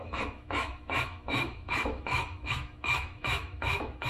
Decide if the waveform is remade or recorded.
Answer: remade